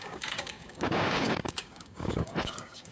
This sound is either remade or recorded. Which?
remade